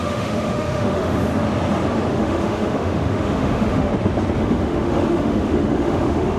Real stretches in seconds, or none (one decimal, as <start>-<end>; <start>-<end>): 1.3-2.1; 3.9-4.4